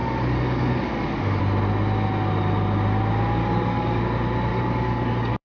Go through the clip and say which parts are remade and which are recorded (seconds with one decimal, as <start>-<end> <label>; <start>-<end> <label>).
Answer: 0.0-1.4 remade; 1.4-3.4 recorded; 3.4-4.0 remade; 4.0-4.5 recorded; 4.5-5.5 remade

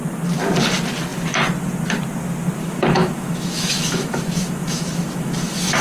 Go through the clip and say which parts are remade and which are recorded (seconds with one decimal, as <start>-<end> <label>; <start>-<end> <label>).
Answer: 0.0-2.6 recorded; 2.6-5.8 remade